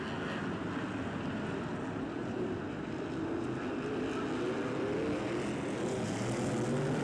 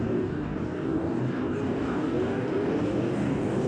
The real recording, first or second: first